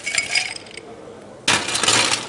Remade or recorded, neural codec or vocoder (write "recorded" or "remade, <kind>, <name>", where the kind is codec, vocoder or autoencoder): recorded